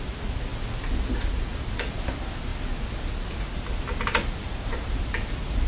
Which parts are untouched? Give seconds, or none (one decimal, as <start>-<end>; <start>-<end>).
0.0-5.7